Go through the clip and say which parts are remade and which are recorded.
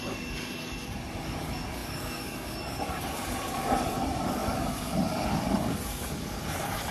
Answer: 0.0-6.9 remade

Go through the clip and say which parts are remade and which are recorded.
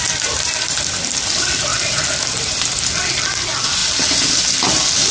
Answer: 0.0-5.1 recorded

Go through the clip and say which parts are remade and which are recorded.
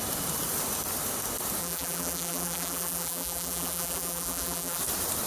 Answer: 0.0-1.6 recorded; 1.6-4.8 remade; 4.8-5.3 recorded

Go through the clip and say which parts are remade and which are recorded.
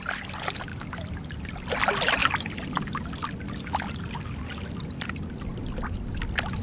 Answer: 0.0-6.6 recorded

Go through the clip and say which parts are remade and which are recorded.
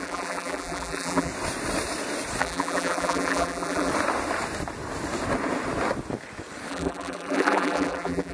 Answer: 0.0-1.3 remade; 1.3-2.4 recorded; 2.4-3.9 remade; 3.9-6.7 recorded; 6.7-8.3 remade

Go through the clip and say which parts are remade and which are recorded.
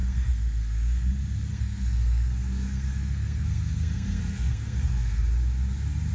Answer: 0.0-1.1 remade; 1.1-1.5 recorded; 1.5-5.2 remade; 5.2-6.1 recorded